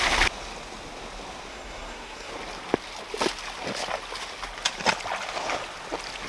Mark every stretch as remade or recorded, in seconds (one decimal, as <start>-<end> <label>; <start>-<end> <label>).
0.0-1.5 recorded; 1.5-2.3 remade; 2.3-6.3 recorded